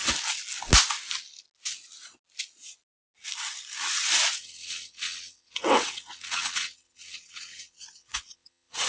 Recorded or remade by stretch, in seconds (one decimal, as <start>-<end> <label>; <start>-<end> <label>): 0.0-4.4 recorded; 4.4-8.9 remade